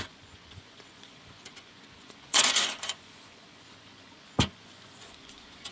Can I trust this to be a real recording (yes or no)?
no